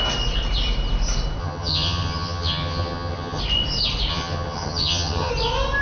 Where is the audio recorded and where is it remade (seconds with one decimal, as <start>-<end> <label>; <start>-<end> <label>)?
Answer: 0.0-1.4 recorded; 1.4-3.4 remade; 3.4-4.1 recorded; 4.1-5.3 remade; 5.3-5.8 recorded